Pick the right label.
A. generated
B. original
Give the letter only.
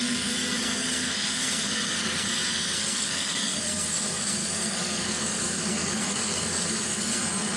A